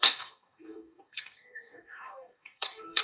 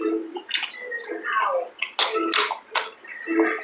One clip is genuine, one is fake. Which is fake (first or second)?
first